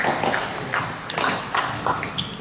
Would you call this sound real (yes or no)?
yes